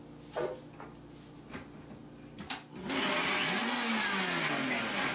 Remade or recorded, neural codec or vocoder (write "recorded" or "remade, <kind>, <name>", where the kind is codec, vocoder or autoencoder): recorded